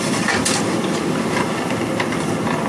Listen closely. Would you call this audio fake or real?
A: real